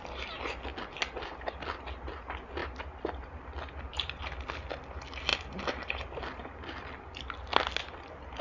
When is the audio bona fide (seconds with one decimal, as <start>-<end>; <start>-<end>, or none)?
0.0-8.4